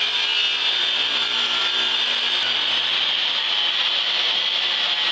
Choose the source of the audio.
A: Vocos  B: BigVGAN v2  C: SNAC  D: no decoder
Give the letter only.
D